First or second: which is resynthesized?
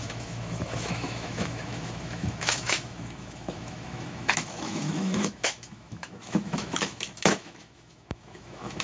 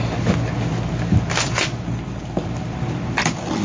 first